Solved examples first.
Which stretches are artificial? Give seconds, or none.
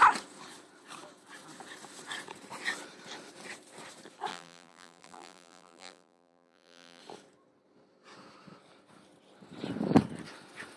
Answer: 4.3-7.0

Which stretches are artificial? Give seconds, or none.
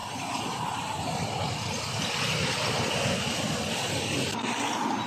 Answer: 0.0-3.1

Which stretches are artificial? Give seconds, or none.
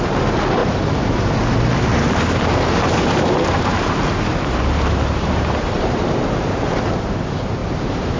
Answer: 0.6-1.3; 1.9-6.8; 7.6-8.2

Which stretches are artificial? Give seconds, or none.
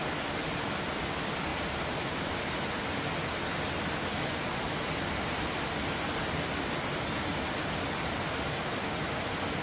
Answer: 1.5-2.3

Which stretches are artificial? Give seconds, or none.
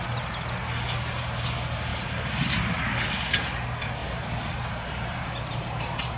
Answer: 1.9-2.6; 4.0-6.2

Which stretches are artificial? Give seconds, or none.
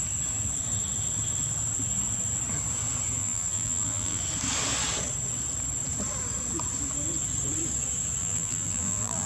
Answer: 3.2-4.2; 8.2-9.3